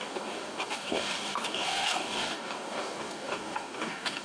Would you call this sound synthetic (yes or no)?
yes